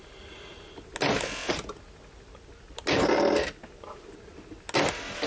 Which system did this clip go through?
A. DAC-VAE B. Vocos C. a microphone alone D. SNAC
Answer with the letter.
C